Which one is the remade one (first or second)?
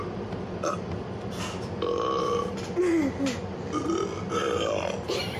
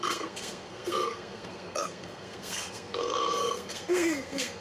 second